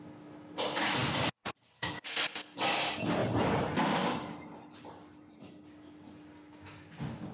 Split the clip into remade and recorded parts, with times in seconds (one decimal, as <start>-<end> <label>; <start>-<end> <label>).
0.0-7.3 recorded